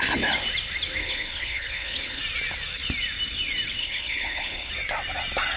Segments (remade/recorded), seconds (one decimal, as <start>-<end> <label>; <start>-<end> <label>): 0.0-1.0 recorded; 1.0-2.2 remade; 2.2-3.8 recorded; 3.8-4.7 remade; 4.7-5.6 recorded